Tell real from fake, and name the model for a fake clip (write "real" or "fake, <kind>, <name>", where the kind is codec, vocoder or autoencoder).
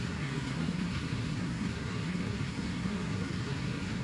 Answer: fake, codec, SNAC